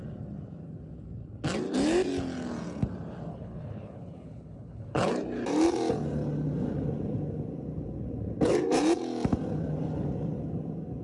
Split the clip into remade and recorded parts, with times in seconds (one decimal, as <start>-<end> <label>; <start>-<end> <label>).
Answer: 0.0-3.3 recorded; 3.3-5.1 remade; 5.1-11.0 recorded